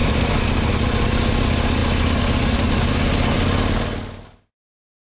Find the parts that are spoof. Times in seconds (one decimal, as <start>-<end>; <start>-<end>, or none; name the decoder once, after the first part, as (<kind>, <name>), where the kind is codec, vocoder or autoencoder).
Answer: none